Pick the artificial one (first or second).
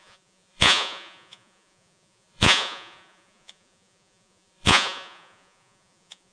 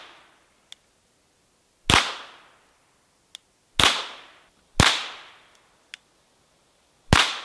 first